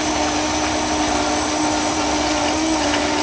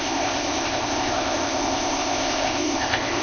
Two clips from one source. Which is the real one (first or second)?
first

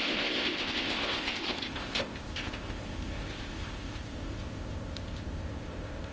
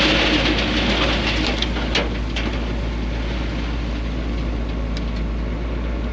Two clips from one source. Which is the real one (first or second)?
second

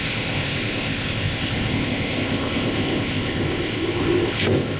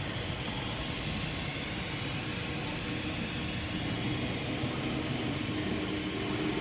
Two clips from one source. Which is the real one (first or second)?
second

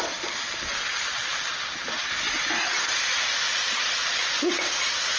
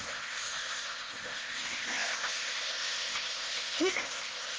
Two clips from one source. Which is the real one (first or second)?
first